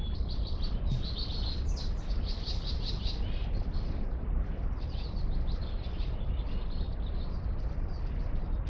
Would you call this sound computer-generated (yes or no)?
no